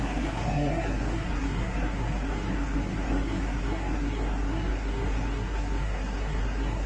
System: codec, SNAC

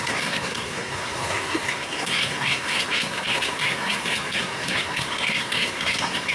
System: codec, SNAC